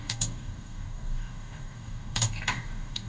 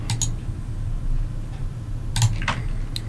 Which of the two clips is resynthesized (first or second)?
first